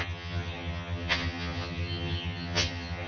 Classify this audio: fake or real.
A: fake